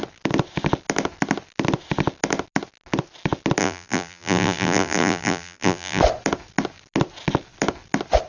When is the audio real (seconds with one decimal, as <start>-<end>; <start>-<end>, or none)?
0.0-3.6; 6.0-8.3